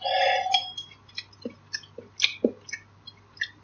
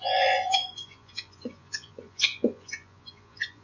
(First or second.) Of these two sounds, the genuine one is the first